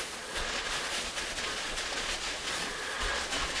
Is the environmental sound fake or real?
fake